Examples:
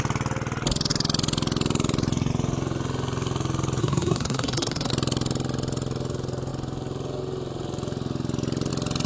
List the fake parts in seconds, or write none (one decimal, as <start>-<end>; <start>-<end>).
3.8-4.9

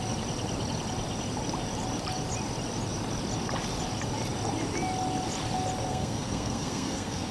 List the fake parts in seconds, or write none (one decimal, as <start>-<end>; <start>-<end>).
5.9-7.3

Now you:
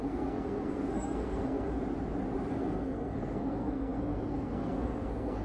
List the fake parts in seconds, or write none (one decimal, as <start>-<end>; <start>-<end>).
0.0-1.8; 2.5-5.4

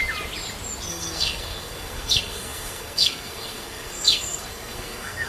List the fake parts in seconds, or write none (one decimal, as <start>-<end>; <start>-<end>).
0.9-5.3